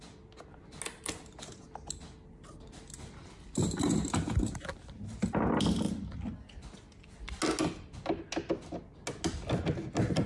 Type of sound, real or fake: real